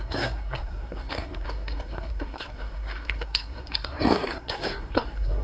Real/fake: fake